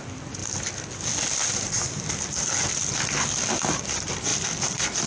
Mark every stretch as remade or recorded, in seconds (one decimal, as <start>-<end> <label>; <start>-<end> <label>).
0.0-5.1 recorded

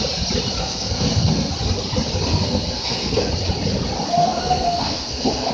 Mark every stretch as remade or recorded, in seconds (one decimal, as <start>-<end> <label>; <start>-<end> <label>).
0.0-0.6 recorded; 0.6-1.5 remade; 1.5-2.3 recorded; 2.3-3.3 remade; 3.3-4.2 recorded; 4.2-5.5 remade

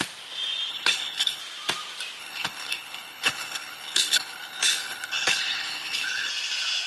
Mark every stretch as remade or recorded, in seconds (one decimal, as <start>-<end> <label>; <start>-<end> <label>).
0.0-0.7 recorded; 0.7-1.4 remade; 1.4-2.2 recorded; 2.2-6.3 remade; 6.3-6.9 recorded